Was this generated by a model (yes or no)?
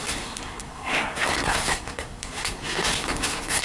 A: yes